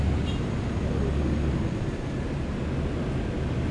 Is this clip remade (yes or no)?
no